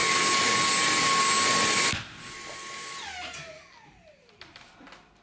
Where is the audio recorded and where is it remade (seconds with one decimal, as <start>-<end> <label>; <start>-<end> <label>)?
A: 0.0-5.2 recorded